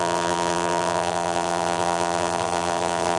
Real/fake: fake